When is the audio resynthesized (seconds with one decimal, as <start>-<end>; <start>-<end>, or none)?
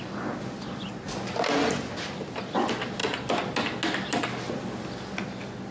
none